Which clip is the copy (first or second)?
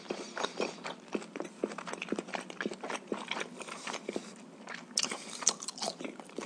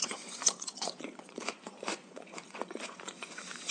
second